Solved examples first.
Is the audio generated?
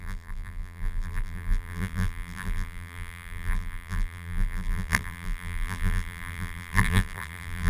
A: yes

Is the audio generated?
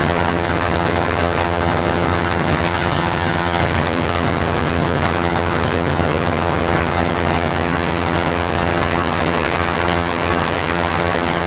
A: yes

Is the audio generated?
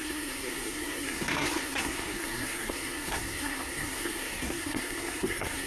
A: yes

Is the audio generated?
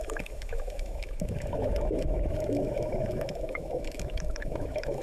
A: yes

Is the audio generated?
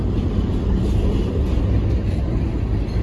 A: no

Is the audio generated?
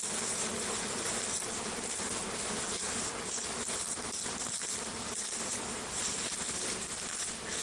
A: no